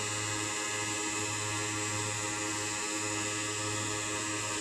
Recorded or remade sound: recorded